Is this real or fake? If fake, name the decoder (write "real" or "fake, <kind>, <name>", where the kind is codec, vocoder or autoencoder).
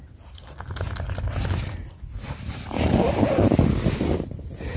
real